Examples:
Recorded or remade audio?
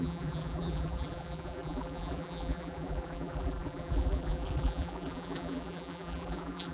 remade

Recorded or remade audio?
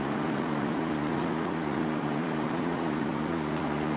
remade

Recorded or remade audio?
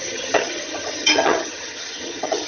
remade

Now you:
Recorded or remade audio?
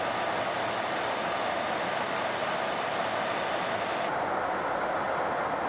recorded